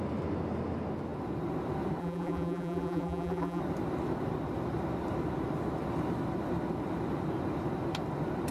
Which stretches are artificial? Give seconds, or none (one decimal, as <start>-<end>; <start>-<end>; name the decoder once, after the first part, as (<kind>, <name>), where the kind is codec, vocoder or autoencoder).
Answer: 2.0-3.6 (vocoder, BigVGAN v2)